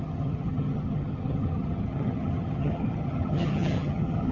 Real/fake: fake